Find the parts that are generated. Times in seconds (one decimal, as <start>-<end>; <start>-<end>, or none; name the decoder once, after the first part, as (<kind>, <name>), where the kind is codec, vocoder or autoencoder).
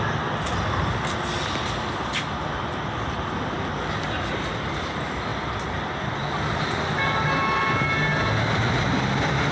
none